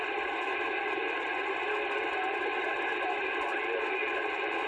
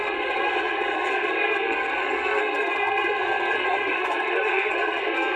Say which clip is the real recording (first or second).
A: first